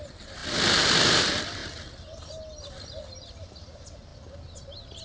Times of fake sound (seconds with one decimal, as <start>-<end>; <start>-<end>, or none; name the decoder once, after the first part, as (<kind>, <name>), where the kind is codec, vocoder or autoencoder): none